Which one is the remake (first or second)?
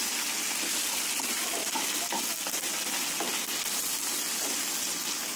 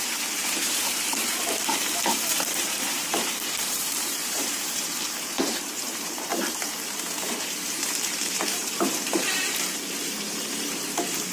second